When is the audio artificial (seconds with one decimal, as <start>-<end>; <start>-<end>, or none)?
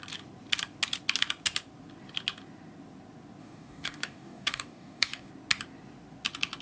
3.4-5.3